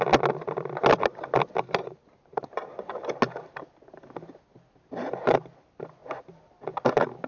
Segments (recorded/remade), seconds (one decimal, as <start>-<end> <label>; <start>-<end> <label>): 0.0-1.8 recorded; 1.8-2.8 remade; 2.8-7.3 recorded